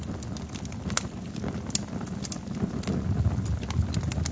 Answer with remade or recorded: recorded